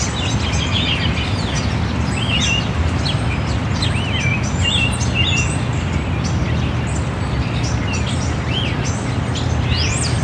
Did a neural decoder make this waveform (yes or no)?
no